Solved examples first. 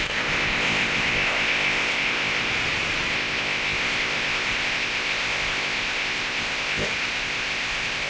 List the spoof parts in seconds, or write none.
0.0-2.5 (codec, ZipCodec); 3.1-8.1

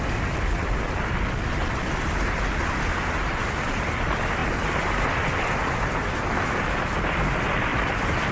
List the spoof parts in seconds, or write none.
3.4-4.0 (vocoder, BigVGAN v2); 7.7-8.3

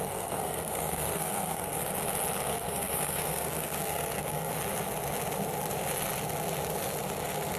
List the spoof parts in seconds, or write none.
0.0-1.8 (codec, SNAC); 2.5-4.5

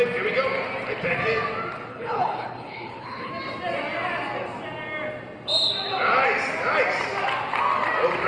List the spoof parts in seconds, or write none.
1.9-3.3 (codec, HILCodec)